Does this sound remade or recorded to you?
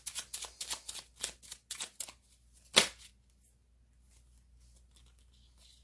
recorded